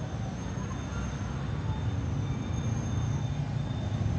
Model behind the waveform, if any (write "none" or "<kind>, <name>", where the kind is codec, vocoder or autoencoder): none